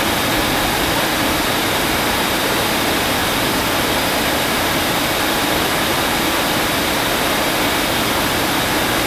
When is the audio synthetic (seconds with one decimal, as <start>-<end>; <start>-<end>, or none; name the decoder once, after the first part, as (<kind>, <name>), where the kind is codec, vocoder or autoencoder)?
none